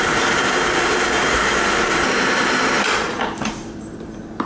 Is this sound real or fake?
fake